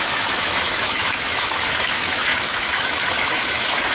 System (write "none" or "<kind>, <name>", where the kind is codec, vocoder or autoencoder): autoencoder, DAC-VAE